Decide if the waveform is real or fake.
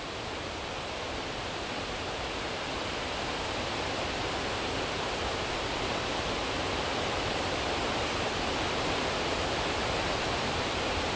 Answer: fake